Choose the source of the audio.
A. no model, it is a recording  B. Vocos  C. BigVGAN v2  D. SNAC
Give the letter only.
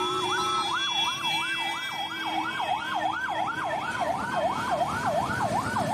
C